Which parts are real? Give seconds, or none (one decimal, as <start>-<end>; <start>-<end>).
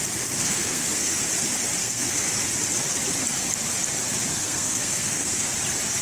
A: 0.0-0.4; 1.2-1.8; 2.3-4.3; 5.5-6.0